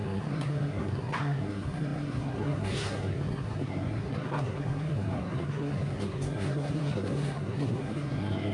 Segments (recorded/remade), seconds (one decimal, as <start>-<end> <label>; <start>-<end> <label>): 0.0-8.5 remade